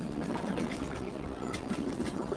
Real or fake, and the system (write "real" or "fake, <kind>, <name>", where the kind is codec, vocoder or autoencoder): fake, vocoder, WaveNeXt